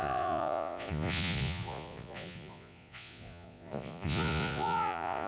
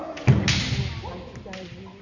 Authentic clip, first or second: second